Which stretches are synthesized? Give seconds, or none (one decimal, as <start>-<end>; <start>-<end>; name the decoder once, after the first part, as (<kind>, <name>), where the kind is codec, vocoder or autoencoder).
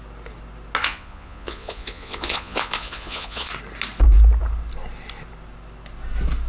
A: 0.8-3.5 (vocoder, Vocos)